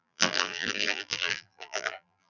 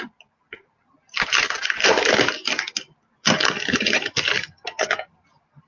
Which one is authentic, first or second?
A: second